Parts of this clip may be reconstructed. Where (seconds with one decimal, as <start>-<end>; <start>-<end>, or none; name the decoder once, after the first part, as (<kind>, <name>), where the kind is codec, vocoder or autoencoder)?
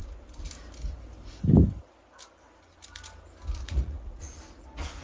3.6-4.2 (vocoder, Vocos)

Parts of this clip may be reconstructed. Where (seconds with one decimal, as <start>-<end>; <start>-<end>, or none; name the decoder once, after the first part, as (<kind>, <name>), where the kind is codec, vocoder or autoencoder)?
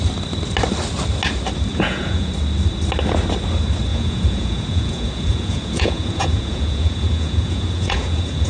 1.7-2.3 (vocoder, Vocos); 3.9-8.5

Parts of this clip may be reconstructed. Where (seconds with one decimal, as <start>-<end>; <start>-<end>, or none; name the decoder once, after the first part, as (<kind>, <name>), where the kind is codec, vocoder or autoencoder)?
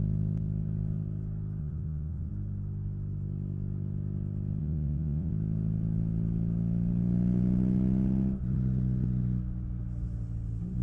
1.6-2.3 (vocoder, Vocos); 4.6-5.3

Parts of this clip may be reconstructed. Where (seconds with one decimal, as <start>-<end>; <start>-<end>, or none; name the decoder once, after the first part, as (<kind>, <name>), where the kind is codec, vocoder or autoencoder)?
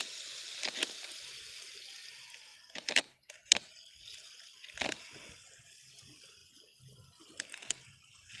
none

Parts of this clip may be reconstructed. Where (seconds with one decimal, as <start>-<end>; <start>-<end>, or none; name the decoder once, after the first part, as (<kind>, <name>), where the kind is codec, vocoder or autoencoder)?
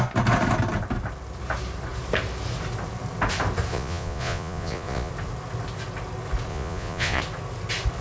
3.7-5.1 (vocoder, Vocos); 6.5-7.2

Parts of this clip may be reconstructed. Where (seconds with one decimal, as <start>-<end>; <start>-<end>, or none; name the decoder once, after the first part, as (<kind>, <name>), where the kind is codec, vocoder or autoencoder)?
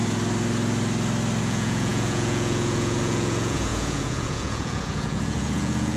1.4-6.0 (vocoder, Vocos)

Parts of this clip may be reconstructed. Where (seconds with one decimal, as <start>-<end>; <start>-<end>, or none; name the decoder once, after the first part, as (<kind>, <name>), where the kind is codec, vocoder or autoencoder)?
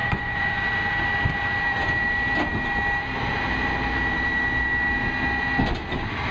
0.0-0.6 (vocoder, Vocos)